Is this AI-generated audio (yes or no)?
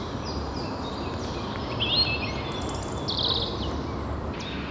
no